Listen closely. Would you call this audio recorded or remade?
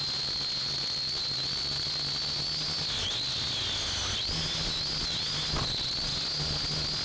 recorded